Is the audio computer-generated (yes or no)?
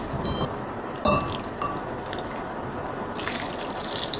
no